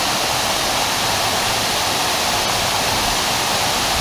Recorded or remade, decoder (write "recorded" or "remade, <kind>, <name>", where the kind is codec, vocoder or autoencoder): recorded